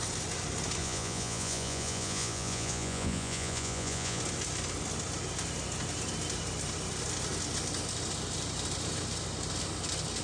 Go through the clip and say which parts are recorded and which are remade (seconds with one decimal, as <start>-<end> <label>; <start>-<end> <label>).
0.0-0.8 recorded; 0.8-4.2 remade; 4.2-10.2 recorded

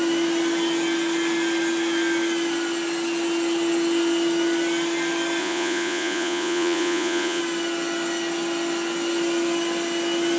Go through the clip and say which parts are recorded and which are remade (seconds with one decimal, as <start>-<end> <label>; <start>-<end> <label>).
0.0-5.4 recorded; 5.4-7.4 remade; 7.4-10.4 recorded

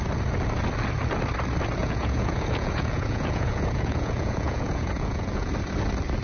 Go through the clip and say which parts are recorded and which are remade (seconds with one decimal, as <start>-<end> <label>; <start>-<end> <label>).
0.0-1.8 recorded; 1.8-5.5 remade; 5.5-6.2 recorded

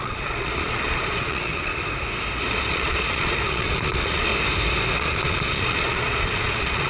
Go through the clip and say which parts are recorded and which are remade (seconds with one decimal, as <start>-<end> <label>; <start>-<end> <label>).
0.0-1.7 remade; 1.7-2.6 recorded; 2.6-4.3 remade; 4.3-5.0 recorded; 5.0-6.9 remade